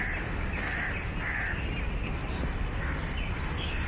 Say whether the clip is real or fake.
real